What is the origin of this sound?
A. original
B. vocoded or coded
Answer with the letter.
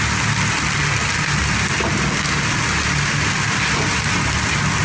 A